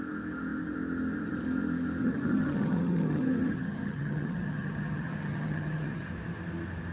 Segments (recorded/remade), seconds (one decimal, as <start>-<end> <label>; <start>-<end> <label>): 0.0-2.0 recorded; 2.0-6.1 remade; 6.1-6.9 recorded